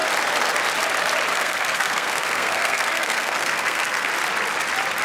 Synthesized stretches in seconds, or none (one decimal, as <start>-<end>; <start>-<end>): 1.3-4.1